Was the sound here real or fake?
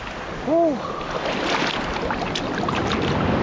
real